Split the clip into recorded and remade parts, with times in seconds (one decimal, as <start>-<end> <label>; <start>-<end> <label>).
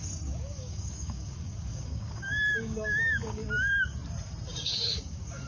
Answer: 0.0-3.4 remade; 3.4-4.5 recorded; 4.5-5.5 remade